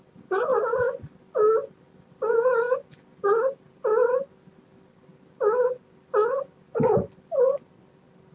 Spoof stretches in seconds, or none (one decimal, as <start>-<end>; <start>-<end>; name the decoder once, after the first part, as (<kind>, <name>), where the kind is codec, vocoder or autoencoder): none